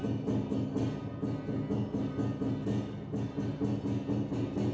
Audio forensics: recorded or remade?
recorded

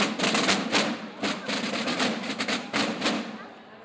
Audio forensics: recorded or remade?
recorded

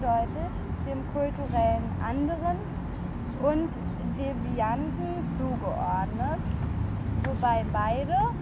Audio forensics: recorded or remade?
recorded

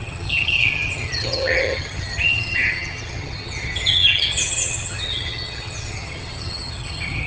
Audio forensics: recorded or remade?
remade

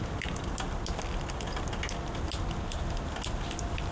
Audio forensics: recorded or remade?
recorded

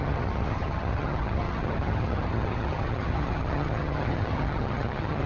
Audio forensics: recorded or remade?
remade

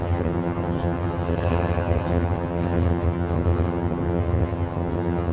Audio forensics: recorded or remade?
remade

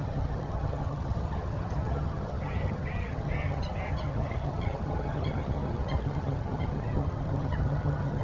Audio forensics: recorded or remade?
remade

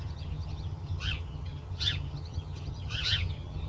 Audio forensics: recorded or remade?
remade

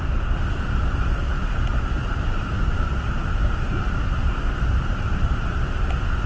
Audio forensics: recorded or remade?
recorded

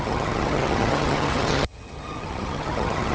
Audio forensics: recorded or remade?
remade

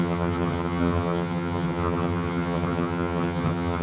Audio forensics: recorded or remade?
remade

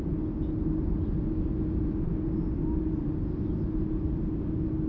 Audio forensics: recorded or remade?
recorded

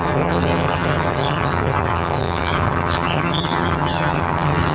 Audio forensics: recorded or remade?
remade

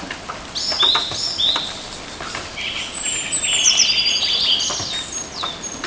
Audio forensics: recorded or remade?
recorded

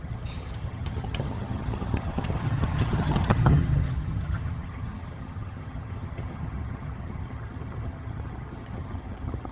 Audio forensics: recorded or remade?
remade